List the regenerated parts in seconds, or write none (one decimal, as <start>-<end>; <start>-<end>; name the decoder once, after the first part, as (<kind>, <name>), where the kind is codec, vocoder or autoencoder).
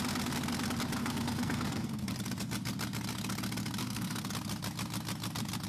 1.0-2.1 (codec, SNAC); 3.8-4.3